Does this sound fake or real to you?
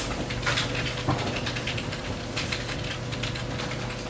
real